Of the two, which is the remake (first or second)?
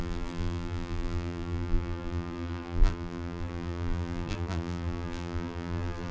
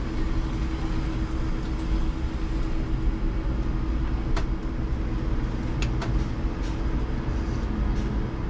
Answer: first